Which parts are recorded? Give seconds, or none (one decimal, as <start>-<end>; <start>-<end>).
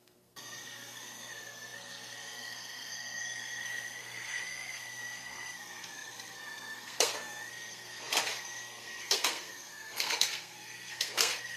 none